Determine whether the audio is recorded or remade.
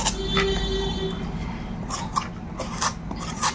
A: recorded